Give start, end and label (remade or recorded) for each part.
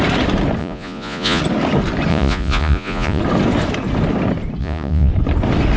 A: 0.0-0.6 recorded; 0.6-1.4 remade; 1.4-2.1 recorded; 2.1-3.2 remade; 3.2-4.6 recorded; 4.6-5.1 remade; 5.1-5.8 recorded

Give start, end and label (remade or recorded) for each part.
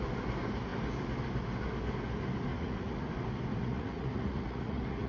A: 0.0-2.5 recorded; 2.5-3.1 remade; 3.1-3.5 recorded; 3.5-5.1 remade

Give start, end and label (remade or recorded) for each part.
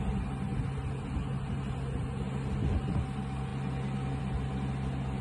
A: 0.0-5.2 recorded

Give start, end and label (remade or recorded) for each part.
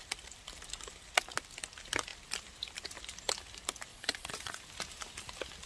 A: 0.0-3.9 recorded; 3.9-4.6 remade; 4.6-5.7 recorded